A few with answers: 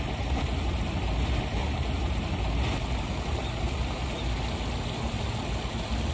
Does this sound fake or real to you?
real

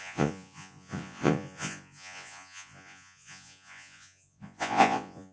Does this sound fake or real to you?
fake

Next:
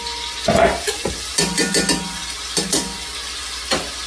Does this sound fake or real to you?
real